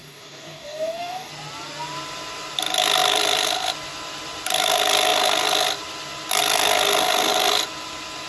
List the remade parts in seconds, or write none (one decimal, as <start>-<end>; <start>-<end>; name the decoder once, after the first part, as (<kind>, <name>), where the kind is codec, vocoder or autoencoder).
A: 0.0-1.3 (codec, DAC)